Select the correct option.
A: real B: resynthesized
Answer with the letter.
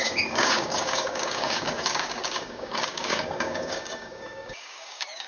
B